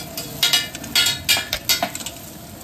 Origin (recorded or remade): recorded